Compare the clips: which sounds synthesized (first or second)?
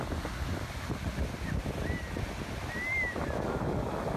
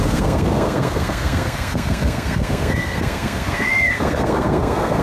second